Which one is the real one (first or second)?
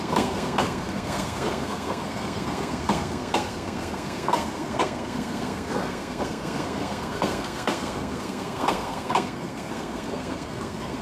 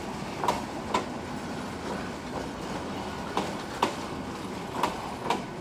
second